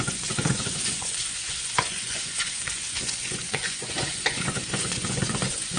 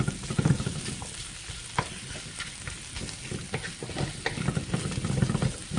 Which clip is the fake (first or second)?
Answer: first